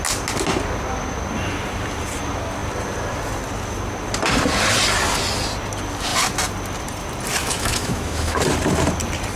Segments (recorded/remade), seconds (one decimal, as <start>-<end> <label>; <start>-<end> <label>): 0.0-7.4 recorded; 7.4-8.4 remade; 8.4-9.4 recorded